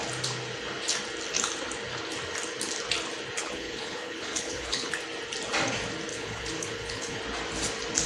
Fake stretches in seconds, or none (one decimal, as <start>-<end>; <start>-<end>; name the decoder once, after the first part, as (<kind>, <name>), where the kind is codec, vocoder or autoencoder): 3.4-4.9 (codec, HILCodec); 6.1-7.2